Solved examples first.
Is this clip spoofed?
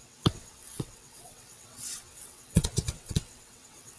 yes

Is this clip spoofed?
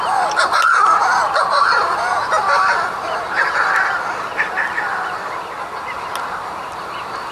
no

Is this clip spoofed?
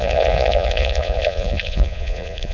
yes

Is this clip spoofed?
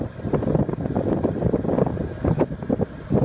no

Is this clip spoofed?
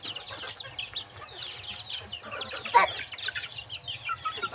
no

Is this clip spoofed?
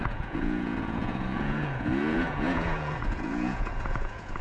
yes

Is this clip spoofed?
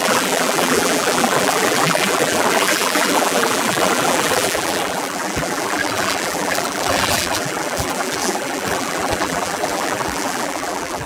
yes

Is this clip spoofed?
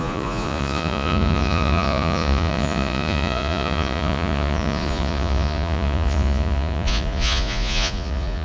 yes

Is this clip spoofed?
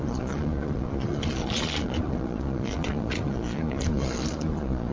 yes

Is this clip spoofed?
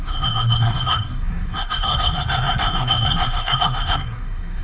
yes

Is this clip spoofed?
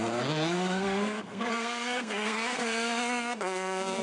yes